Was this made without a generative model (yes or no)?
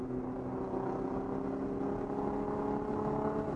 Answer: yes